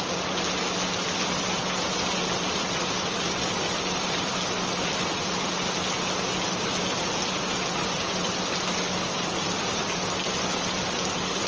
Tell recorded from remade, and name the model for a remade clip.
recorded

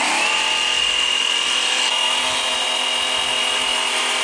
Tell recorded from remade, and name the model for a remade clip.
recorded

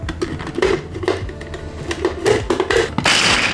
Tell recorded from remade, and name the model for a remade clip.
recorded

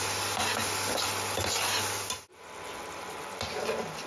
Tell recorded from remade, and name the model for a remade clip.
recorded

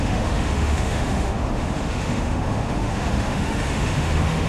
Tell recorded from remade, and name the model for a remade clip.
remade, autoencoder, DAC-VAE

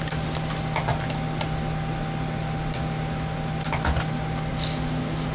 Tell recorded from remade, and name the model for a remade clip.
recorded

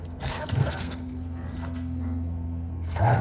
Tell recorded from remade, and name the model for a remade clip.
remade, codec, SNAC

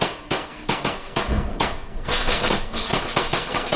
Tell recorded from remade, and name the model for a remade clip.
remade, codec, SNAC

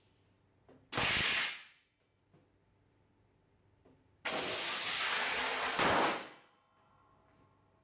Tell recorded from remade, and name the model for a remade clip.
recorded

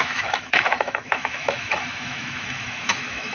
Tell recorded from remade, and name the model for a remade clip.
remade, autoencoder, DAC-VAE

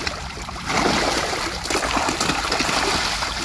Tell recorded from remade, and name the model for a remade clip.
recorded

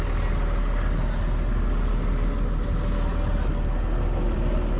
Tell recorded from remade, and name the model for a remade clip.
recorded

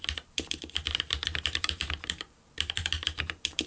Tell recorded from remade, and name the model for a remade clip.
remade, vocoder, BigVGAN v2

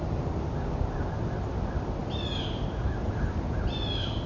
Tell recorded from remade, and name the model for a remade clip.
recorded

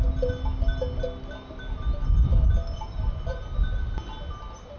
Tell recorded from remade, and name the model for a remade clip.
recorded